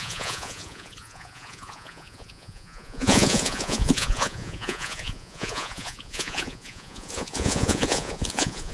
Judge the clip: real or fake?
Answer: fake